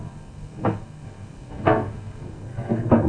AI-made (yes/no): yes